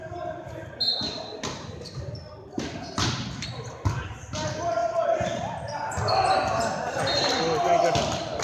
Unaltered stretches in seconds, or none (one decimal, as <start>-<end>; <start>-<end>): 0.0-8.4